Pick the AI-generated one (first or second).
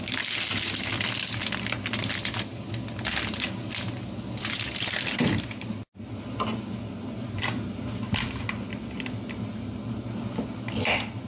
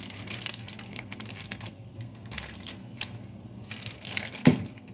second